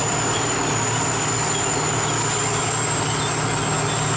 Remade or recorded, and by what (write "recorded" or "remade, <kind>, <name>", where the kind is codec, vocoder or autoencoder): recorded